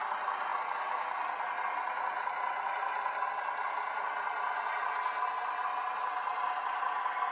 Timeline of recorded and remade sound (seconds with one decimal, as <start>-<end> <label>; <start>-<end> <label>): 0.0-7.3 recorded